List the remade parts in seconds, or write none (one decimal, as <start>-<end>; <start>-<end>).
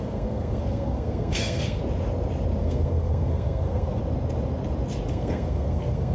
0.0-1.8; 2.6-4.0; 5.1-6.1